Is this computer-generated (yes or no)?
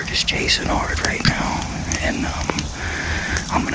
no